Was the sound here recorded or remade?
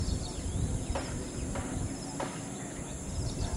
recorded